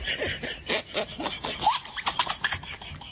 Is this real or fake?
real